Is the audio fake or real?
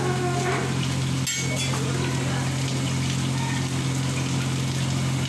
real